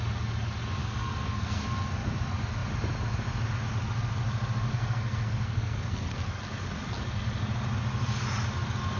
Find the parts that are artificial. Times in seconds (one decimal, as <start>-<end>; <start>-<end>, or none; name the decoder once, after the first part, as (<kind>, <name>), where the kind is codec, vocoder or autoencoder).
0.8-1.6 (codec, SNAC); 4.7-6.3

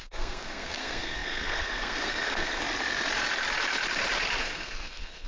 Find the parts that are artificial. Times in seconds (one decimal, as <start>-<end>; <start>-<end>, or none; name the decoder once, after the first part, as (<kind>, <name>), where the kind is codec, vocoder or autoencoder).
0.0-2.6 (codec, SNAC); 4.4-5.3

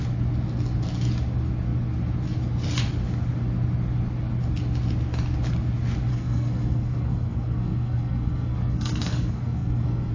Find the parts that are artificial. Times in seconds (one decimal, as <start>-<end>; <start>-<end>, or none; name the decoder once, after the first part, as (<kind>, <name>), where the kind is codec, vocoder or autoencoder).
6.1-10.1 (codec, SNAC)

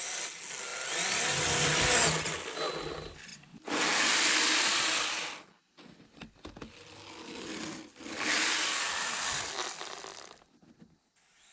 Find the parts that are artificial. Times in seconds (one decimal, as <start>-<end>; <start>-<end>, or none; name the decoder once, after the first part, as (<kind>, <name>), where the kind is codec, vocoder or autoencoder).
none

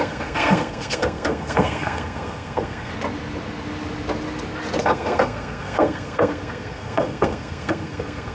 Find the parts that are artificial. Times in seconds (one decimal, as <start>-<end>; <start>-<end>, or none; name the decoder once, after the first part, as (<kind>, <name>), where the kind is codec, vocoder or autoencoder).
0.0-2.9 (codec, SNAC); 4.8-8.3

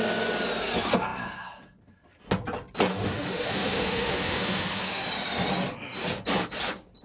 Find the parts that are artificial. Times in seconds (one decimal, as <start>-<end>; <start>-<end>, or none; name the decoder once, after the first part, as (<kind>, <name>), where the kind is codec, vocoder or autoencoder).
2.9-5.0 (autoencoder, DAC-VAE)

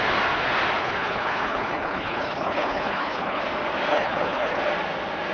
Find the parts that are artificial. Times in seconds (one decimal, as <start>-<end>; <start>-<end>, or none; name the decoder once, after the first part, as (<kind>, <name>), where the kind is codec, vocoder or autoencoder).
0.8-3.4 (codec, HILCodec); 3.9-4.6